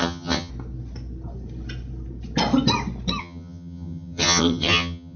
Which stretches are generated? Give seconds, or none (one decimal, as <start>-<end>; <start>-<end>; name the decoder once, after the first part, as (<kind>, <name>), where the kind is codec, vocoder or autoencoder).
0.0-0.5 (vocoder, HiFi-GAN); 3.2-5.2